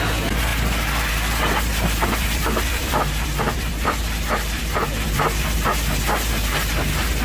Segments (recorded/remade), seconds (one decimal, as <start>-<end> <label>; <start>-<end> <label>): 0.0-1.7 recorded; 1.7-5.7 remade; 5.7-7.2 recorded